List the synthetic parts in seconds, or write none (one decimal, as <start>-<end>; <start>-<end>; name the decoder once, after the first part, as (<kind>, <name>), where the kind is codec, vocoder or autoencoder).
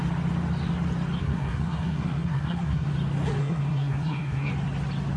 1.2-2.9 (codec, SNAC); 3.4-4.5